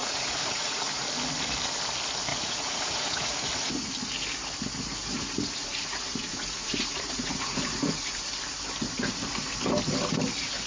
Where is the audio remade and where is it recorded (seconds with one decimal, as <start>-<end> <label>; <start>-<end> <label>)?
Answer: 0.0-0.8 remade; 0.8-2.3 recorded; 2.3-3.9 remade; 3.9-5.1 recorded; 5.1-8.2 remade; 8.2-10.7 recorded